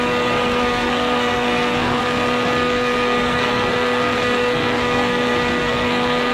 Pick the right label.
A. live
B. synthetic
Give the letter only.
B